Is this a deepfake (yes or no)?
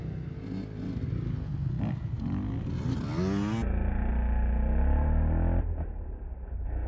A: no